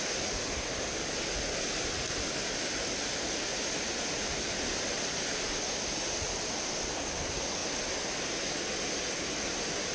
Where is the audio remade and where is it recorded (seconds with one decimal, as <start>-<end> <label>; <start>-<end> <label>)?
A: 0.0-9.9 recorded